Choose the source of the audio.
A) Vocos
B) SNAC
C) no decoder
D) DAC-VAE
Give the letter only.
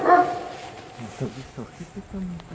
C